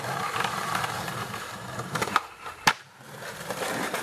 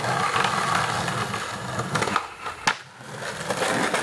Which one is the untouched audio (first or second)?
second